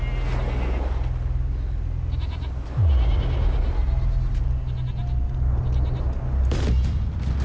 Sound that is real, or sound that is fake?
real